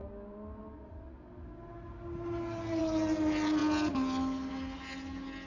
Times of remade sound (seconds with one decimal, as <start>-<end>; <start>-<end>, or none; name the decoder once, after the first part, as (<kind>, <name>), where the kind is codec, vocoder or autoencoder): none